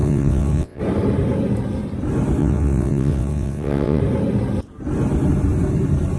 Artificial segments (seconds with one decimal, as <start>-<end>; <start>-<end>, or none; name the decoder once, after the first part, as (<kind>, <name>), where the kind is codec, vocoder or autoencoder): 0.0-0.8 (vocoder, WaveNeXt); 2.4-4.0